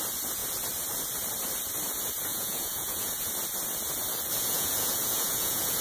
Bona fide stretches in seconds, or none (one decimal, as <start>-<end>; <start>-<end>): 0.0-2.3; 3.3-4.3